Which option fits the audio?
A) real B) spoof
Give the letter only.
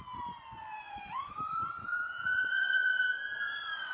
B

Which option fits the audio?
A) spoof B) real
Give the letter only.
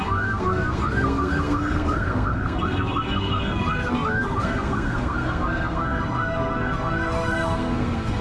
A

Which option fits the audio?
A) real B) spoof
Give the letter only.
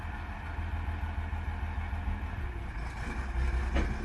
A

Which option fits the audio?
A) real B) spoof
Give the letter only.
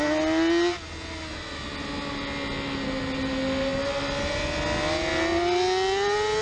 A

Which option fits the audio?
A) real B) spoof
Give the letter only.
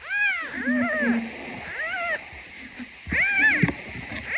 A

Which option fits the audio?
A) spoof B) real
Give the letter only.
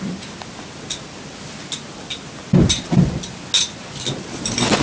B